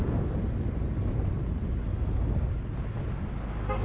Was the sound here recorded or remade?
recorded